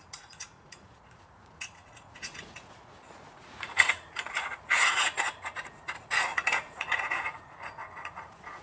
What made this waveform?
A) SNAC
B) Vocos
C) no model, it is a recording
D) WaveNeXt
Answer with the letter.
B